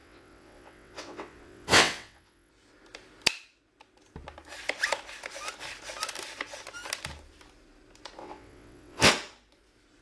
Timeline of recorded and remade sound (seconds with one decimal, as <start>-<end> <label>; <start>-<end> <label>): 0.0-2.5 remade; 2.5-8.2 recorded; 8.2-9.1 remade; 9.1-10.0 recorded